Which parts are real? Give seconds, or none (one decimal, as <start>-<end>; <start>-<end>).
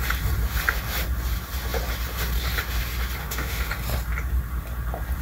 0.0-3.2; 3.7-5.2